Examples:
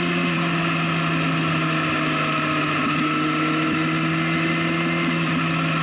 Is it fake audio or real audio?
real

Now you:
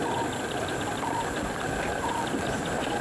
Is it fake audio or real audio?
real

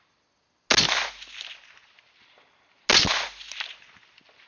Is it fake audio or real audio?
real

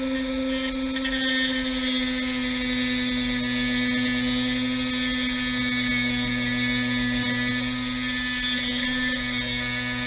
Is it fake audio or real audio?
real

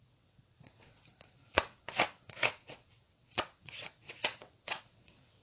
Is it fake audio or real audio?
fake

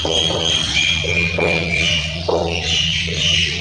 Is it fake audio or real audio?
fake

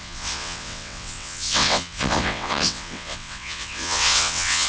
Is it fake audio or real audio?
fake